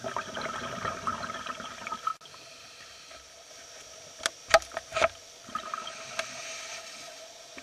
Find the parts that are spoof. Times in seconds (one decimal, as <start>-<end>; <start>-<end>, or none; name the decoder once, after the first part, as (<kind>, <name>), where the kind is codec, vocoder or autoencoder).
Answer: 4.9-5.5 (vocoder, BigVGAN v2)